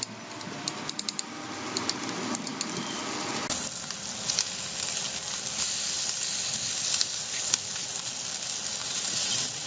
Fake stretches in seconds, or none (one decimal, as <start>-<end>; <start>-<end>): 8.8-9.7